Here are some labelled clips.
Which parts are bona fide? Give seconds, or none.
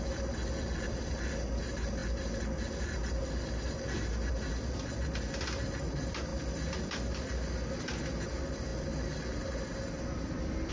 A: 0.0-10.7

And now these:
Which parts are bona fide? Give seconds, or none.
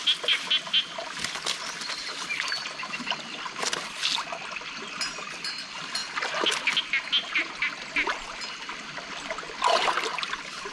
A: 0.0-10.7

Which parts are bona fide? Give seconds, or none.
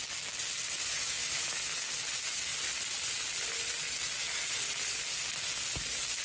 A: 0.0-0.8; 1.6-6.2